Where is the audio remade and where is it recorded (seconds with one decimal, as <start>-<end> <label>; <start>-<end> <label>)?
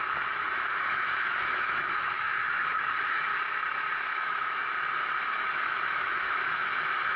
0.0-3.3 remade; 3.3-4.1 recorded; 4.1-4.6 remade; 4.6-5.3 recorded; 5.3-7.2 remade